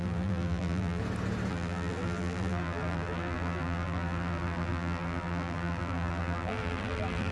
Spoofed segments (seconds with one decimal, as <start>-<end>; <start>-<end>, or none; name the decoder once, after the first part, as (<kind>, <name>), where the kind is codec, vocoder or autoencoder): 0.0-1.0 (vocoder, BigVGAN v2); 1.5-7.3